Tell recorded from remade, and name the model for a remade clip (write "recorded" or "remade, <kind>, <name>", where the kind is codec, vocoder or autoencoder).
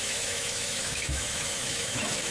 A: remade, autoencoder, DAC-VAE